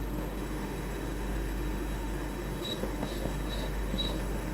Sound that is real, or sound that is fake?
fake